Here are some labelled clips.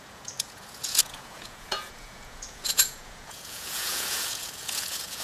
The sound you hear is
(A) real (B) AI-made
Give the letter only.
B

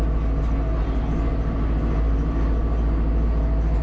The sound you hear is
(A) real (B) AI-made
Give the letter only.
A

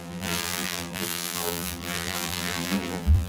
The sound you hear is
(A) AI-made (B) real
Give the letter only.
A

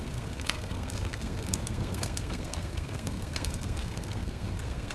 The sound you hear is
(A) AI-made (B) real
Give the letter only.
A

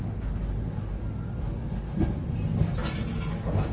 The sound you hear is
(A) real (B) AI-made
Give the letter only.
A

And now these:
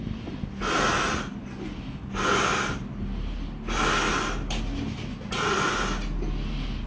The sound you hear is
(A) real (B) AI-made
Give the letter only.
A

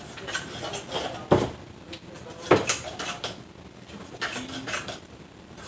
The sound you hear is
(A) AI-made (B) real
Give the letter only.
A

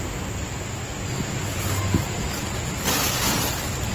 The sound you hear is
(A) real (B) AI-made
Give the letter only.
A